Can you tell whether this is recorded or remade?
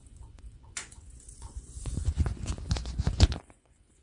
remade